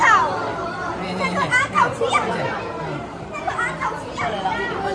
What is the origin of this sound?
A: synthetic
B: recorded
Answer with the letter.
A